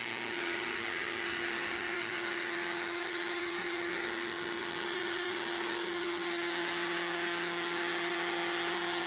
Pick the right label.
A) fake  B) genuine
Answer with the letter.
A